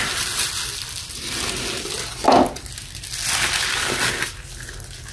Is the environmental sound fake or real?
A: real